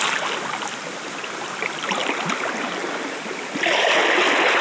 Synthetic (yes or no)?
no